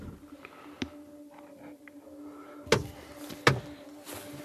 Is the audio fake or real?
real